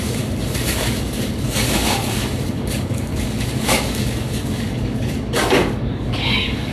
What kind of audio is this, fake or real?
fake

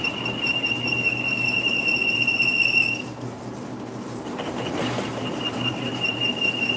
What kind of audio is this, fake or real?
real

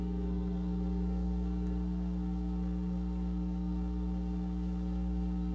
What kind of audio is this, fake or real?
fake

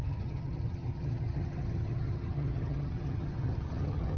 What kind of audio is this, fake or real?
fake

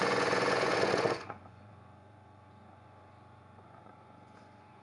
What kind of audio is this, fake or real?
fake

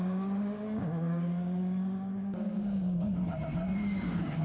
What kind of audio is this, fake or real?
fake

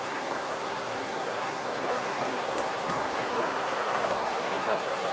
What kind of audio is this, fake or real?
fake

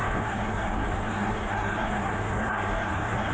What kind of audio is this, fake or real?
fake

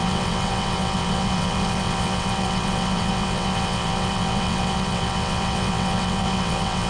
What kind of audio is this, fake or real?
fake